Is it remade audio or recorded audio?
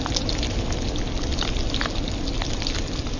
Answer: recorded